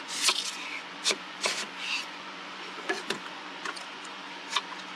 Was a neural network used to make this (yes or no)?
yes